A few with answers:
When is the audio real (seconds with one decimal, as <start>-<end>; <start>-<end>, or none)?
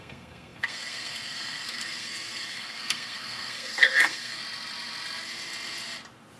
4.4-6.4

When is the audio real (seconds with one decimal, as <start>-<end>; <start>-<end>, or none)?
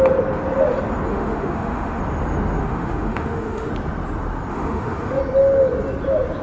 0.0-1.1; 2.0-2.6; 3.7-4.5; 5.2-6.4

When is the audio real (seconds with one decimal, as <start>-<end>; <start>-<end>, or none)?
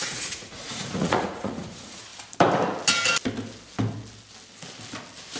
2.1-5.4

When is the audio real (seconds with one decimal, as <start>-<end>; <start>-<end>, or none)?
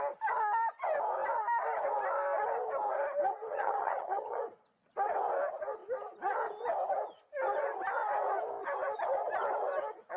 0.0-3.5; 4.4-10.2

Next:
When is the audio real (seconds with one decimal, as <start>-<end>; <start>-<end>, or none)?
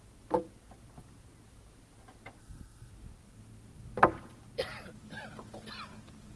0.0-2.4; 2.9-6.4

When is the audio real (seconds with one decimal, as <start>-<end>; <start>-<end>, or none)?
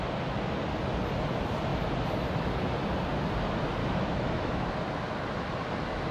0.0-3.8; 4.6-6.1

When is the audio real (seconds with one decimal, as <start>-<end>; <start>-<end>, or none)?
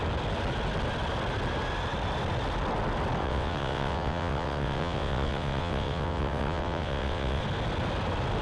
0.0-3.2; 7.4-8.4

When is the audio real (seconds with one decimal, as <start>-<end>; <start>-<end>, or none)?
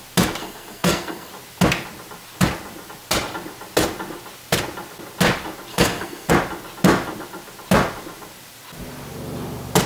0.0-0.4; 1.3-5.7; 6.3-9.9